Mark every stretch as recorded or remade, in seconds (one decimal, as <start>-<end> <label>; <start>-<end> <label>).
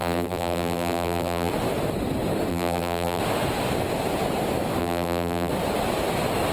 0.0-1.5 remade; 1.5-2.5 recorded; 2.5-3.2 remade; 3.2-4.8 recorded; 4.8-5.5 remade; 5.5-6.5 recorded